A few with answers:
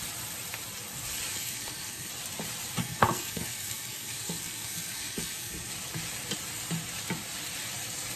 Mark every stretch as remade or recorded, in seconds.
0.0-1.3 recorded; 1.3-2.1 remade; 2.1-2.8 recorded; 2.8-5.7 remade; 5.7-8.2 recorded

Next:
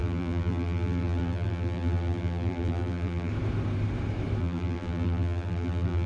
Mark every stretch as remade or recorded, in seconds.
0.0-3.3 remade; 3.3-4.4 recorded; 4.4-6.1 remade

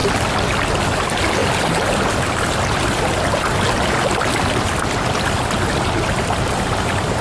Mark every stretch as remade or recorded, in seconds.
0.0-7.2 recorded

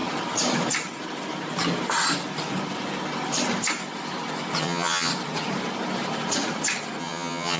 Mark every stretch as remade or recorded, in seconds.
0.0-4.6 recorded; 4.6-5.1 remade; 5.1-7.0 recorded; 7.0-7.6 remade

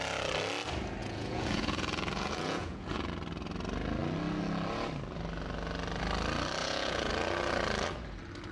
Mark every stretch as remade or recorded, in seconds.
0.0-1.0 recorded; 1.0-3.1 remade; 3.1-6.6 recorded; 6.6-7.1 remade; 7.1-8.5 recorded

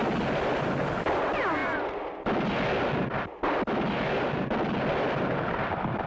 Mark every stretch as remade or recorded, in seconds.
0.0-6.1 recorded

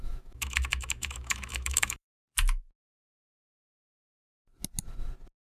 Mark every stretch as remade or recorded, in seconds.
0.0-2.1 remade; 2.1-5.4 recorded